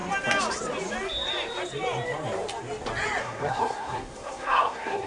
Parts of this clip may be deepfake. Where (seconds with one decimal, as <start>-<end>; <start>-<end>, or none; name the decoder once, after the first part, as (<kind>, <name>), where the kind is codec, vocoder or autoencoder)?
3.2-5.1 (codec, SNAC)